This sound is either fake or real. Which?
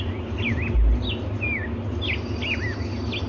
real